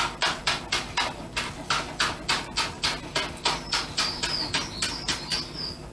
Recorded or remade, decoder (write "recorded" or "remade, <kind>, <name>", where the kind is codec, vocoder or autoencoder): recorded